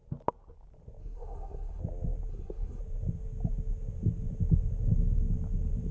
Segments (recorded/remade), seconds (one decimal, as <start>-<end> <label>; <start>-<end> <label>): 0.0-1.0 recorded; 1.0-1.8 remade; 1.8-2.3 recorded; 2.3-2.8 remade; 2.8-5.9 recorded